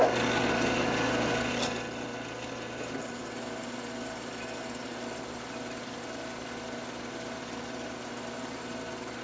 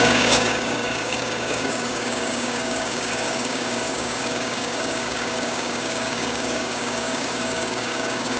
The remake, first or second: second